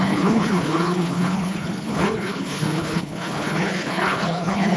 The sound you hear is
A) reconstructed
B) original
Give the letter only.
A